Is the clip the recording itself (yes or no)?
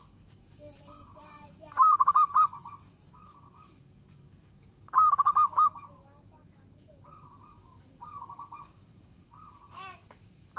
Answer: no